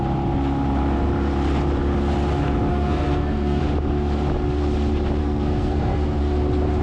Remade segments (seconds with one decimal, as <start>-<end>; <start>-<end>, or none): 2.7-3.6; 5.2-6.2